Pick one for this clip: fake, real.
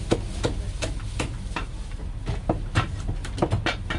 real